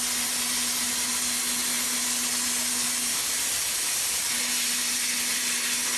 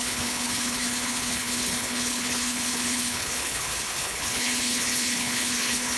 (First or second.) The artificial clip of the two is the second